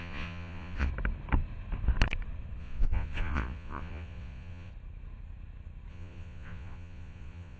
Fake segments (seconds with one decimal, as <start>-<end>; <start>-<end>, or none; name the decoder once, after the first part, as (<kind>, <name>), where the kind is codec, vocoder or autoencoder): 0.0-0.9 (vocoder, Vocos); 2.6-4.7; 5.9-7.6